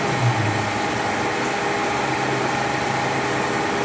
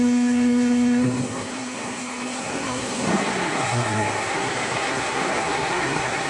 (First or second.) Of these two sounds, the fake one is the second